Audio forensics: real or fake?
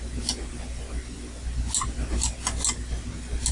real